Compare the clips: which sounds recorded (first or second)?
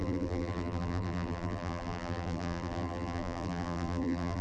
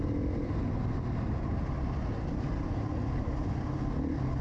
second